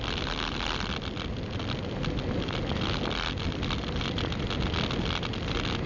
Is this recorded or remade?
recorded